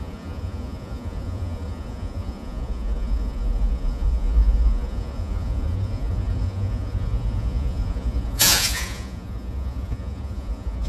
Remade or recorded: remade